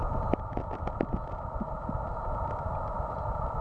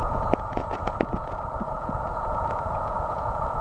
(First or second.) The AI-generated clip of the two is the second